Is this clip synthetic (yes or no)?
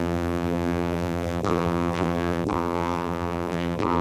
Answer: yes